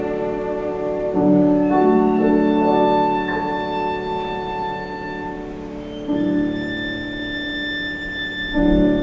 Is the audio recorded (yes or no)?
yes